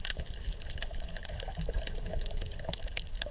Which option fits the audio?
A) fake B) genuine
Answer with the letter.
A